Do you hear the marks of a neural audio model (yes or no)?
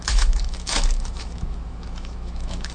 yes